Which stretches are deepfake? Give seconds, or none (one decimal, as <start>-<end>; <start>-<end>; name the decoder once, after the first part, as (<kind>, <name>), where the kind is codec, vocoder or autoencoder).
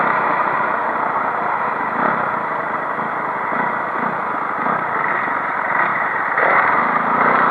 none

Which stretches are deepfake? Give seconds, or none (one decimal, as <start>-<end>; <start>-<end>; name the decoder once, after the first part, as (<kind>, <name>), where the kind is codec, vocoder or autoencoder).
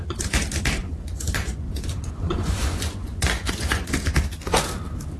0.8-3.9 (vocoder, Vocos)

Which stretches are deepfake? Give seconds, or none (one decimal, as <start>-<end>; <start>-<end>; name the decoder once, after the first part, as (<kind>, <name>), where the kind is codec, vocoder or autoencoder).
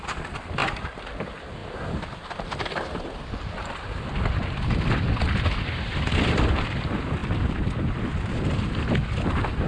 0.0-0.6 (vocoder, BigVGAN v2); 1.2-1.6; 5.6-9.7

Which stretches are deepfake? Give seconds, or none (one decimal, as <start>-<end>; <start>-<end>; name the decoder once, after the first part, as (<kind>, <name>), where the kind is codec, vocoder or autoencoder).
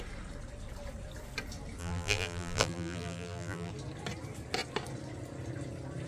1.8-3.7 (vocoder, BigVGAN v2)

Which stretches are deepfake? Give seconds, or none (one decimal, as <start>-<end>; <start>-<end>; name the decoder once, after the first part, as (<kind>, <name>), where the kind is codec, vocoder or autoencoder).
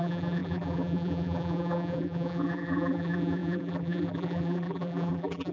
0.0-5.5 (vocoder, BigVGAN v2)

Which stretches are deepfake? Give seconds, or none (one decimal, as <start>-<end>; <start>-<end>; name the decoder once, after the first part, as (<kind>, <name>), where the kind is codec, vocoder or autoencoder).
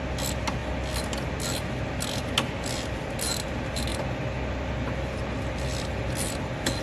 none